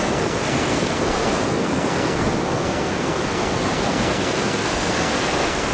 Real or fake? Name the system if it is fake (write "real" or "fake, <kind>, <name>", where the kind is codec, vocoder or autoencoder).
fake, codec, SNAC